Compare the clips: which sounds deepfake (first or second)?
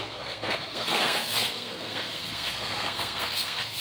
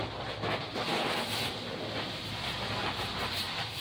first